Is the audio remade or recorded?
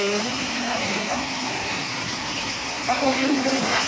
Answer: remade